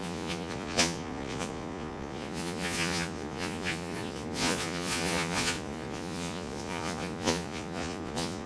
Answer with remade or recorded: remade